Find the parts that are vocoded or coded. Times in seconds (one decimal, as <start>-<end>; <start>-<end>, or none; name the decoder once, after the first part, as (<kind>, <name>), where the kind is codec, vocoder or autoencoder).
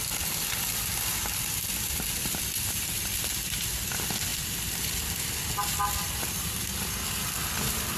none